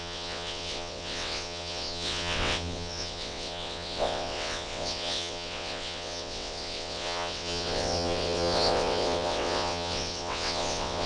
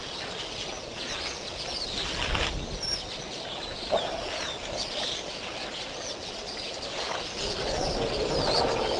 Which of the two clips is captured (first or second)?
second